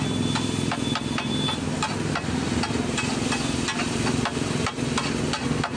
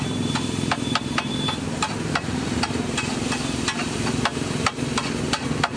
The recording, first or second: first